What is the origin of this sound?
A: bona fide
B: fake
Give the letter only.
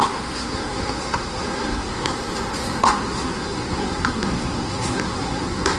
B